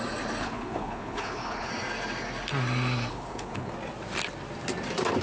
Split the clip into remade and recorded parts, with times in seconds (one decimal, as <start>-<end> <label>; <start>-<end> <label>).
0.0-0.4 recorded; 0.4-1.7 remade; 1.7-3.1 recorded; 3.1-3.7 remade; 3.7-5.2 recorded